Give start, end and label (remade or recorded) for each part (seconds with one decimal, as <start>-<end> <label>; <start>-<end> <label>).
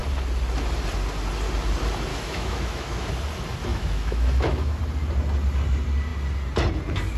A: 0.0-2.1 recorded; 2.1-3.1 remade; 3.1-3.7 recorded; 3.7-4.8 remade; 4.8-7.2 recorded